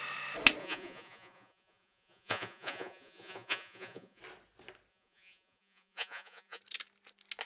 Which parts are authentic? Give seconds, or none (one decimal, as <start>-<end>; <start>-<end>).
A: 0.0-0.6; 4.2-4.9; 6.6-7.5